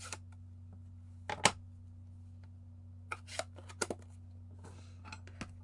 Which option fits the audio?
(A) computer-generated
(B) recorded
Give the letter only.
B